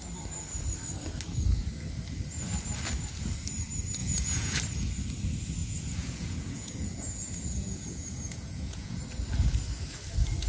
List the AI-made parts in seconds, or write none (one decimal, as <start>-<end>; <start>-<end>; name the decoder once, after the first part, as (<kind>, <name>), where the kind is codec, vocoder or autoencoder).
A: 4.0-4.6 (vocoder, Vocos); 5.6-9.0